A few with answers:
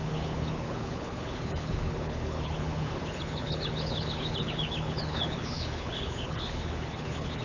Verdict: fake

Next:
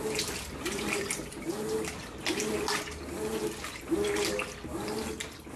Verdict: real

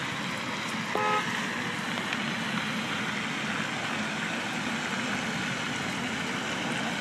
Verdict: real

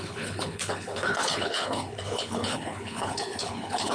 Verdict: fake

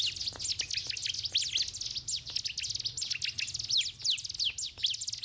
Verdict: real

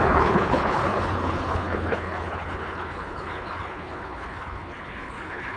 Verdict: fake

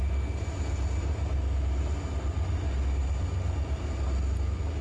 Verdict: real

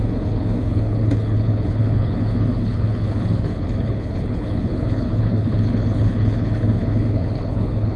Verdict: fake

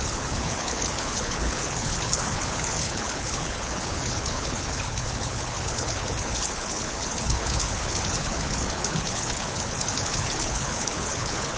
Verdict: fake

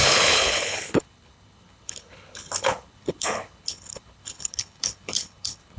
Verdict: fake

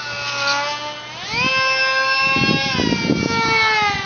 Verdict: real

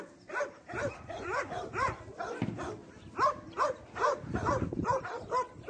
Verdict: real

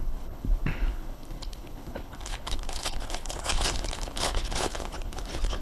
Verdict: fake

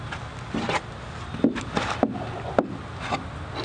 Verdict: real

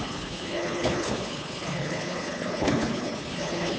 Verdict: fake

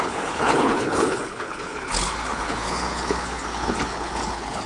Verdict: fake